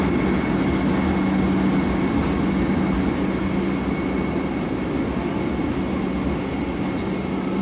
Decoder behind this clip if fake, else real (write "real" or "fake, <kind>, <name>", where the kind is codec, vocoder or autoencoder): real